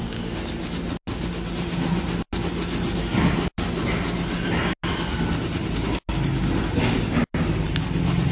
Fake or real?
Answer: real